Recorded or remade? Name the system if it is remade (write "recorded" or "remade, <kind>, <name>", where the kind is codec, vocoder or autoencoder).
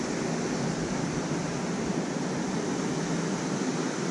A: recorded